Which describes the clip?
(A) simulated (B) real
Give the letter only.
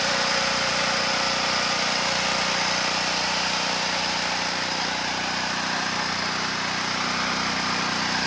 B